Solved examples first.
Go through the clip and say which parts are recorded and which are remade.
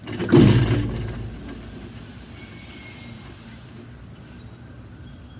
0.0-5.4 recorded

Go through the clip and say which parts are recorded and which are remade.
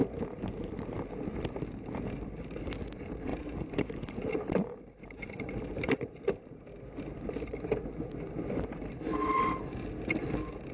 0.0-0.7 remade; 0.7-3.3 recorded; 3.3-6.6 remade; 6.6-10.7 recorded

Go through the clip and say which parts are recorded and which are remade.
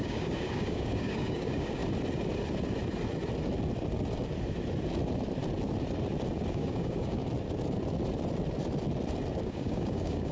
0.0-1.8 remade; 1.8-6.5 recorded; 6.5-7.2 remade; 7.2-9.4 recorded; 9.4-10.3 remade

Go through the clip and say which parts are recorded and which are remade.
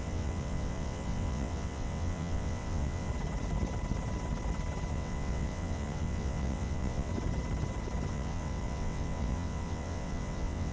0.0-3.1 remade; 3.1-4.9 recorded; 4.9-7.1 remade; 7.1-8.1 recorded; 8.1-10.7 remade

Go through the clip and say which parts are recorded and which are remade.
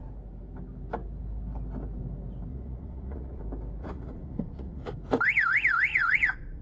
0.0-2.5 recorded; 2.5-3.4 remade; 3.4-3.8 recorded; 3.8-4.9 remade; 4.9-5.9 recorded; 5.9-6.6 remade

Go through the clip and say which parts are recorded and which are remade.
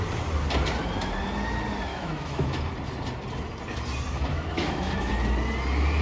0.0-1.9 recorded; 1.9-2.7 remade; 2.7-4.3 recorded; 4.3-5.1 remade; 5.1-6.0 recorded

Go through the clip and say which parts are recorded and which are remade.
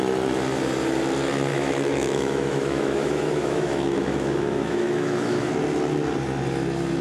0.0-1.5 recorded; 1.5-5.5 remade; 5.5-7.0 recorded